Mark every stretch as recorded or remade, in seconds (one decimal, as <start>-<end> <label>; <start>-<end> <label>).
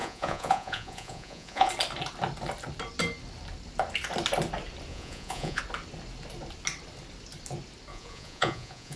0.0-1.7 remade; 1.7-4.9 recorded; 4.9-5.6 remade; 5.6-7.9 recorded; 7.9-9.0 remade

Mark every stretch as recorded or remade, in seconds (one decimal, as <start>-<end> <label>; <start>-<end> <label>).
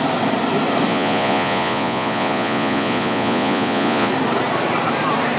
0.0-0.9 recorded; 0.9-4.1 remade; 4.1-5.4 recorded